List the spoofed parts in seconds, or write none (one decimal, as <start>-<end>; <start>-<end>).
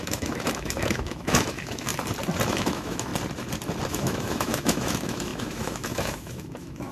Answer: 0.0-1.9; 2.5-3.1; 3.9-6.9